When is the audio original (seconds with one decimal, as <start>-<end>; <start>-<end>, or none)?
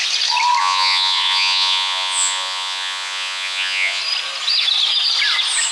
0.0-0.6; 4.0-5.7